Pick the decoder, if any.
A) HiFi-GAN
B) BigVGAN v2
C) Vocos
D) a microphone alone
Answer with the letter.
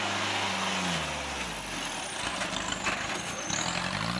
D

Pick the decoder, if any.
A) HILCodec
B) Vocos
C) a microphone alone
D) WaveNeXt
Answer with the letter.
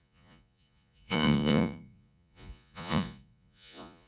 B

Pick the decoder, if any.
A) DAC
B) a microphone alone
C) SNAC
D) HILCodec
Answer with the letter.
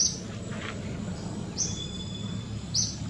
B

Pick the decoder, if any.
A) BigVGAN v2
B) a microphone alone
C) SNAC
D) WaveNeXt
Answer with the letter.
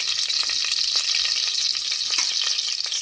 B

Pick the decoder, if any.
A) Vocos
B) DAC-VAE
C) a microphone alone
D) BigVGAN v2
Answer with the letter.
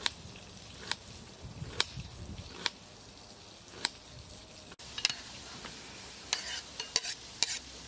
C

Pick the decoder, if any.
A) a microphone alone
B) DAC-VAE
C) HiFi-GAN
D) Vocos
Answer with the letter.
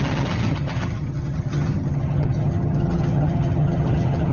C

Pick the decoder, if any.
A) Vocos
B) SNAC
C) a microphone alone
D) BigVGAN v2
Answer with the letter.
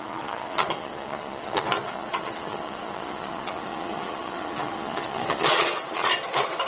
A